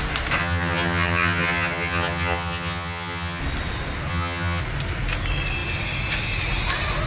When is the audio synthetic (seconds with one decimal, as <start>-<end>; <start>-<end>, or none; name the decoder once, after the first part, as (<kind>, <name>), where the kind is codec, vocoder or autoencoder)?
0.4-3.4 (vocoder, HiFi-GAN); 4.1-4.6